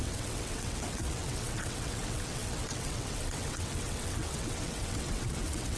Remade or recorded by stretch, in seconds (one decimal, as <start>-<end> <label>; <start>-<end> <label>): 0.0-5.8 remade